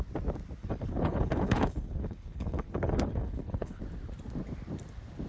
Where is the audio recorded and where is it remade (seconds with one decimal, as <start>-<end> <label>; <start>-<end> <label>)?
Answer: 0.0-0.6 recorded; 0.6-3.8 remade; 3.8-5.3 recorded